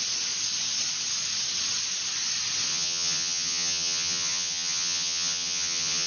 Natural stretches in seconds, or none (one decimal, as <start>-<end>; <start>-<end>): 0.0-2.7